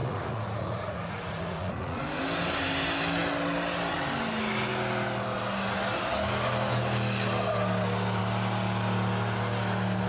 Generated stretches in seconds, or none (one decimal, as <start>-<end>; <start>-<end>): 0.0-2.0